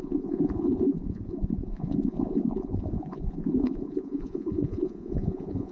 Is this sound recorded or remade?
remade